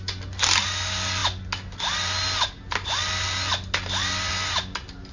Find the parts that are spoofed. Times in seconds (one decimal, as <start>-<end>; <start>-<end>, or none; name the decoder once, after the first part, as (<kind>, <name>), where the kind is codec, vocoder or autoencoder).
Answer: none